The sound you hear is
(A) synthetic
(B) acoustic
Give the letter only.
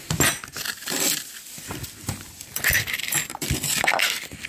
A